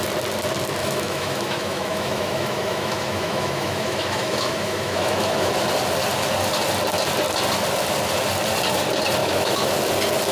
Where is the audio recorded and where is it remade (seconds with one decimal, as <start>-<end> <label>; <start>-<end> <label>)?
0.0-0.8 recorded; 0.8-5.5 remade; 5.5-9.2 recorded; 9.2-9.7 remade; 9.7-10.3 recorded